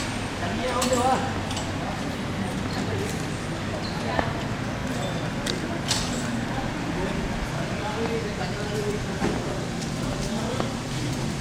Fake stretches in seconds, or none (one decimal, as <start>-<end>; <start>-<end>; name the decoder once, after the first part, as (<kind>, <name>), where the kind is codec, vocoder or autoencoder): none